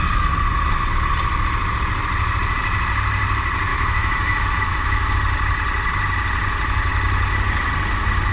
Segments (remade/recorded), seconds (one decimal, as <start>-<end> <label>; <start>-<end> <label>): 0.0-3.7 recorded; 3.7-5.1 remade; 5.1-8.3 recorded